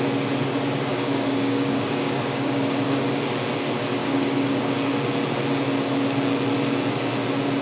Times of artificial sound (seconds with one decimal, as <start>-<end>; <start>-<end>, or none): 0.9-3.0; 4.0-4.6